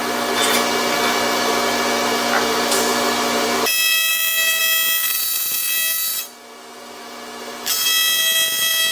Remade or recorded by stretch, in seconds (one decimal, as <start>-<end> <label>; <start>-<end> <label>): 0.0-8.9 recorded